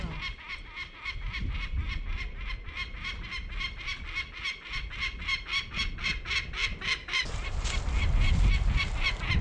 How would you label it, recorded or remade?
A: recorded